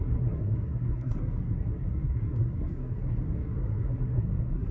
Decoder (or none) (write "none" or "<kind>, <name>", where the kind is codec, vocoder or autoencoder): codec, SNAC